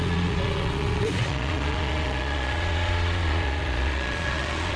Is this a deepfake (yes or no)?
yes